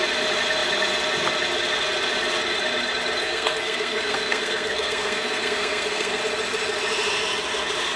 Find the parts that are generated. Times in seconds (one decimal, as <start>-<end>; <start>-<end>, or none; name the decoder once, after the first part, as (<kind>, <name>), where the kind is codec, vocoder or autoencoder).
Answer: 3.2-6.2 (codec, SNAC)